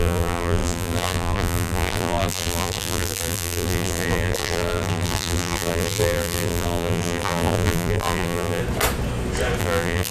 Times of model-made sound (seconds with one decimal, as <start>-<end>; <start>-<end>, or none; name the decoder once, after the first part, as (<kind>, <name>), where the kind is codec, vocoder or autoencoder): 0.0-8.6 (vocoder, BigVGAN v2); 9.6-10.1